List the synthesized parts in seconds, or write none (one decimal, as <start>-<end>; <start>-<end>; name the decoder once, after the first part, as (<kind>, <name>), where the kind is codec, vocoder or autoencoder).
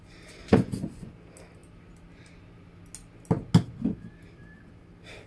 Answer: 0.4-1.1 (vocoder, Vocos)